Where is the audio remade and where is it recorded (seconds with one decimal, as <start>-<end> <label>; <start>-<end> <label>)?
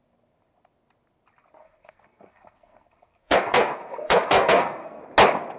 0.0-1.6 recorded; 1.6-5.0 remade; 5.0-5.6 recorded